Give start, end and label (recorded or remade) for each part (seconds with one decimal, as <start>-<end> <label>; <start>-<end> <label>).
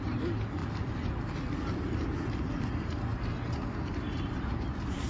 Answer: 0.0-5.1 recorded